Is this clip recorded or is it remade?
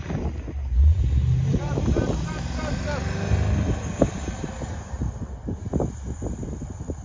recorded